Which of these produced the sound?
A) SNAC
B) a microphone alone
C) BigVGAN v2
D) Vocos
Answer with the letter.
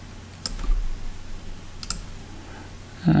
B